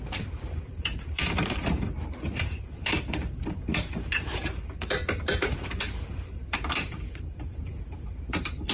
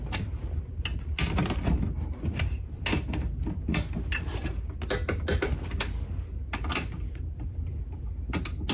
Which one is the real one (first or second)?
second